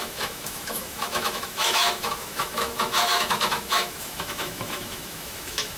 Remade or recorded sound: remade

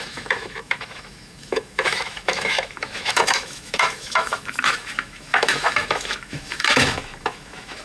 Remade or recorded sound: remade